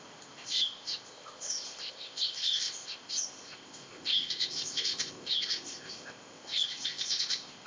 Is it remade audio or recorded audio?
remade